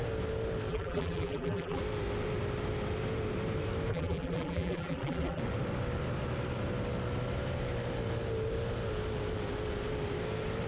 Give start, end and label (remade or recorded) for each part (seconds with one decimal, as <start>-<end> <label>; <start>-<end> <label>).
0.0-0.7 recorded; 0.7-1.8 remade; 1.8-3.9 recorded; 3.9-5.4 remade; 5.4-10.7 recorded